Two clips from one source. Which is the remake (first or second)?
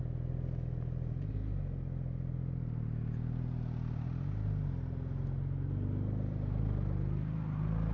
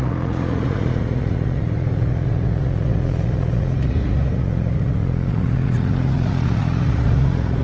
second